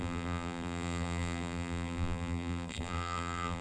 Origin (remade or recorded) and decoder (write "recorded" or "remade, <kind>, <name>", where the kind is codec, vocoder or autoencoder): remade, vocoder, BigVGAN v2